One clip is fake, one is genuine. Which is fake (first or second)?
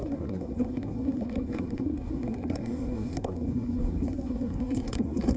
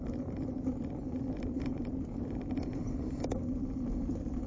first